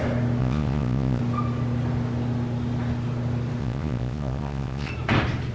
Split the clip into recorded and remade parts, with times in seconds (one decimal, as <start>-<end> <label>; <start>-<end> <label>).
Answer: 0.0-0.4 recorded; 0.4-1.2 remade; 1.2-3.6 recorded; 3.6-4.9 remade; 4.9-5.5 recorded